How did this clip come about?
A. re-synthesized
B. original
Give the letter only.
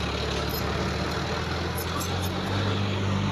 B